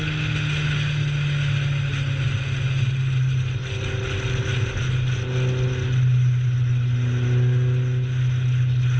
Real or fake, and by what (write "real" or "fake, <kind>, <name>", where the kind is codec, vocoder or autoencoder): real